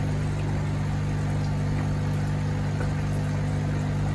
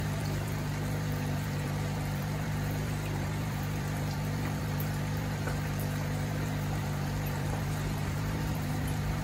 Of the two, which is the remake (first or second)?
second